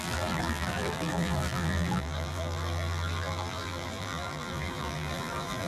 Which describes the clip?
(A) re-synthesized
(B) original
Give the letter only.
A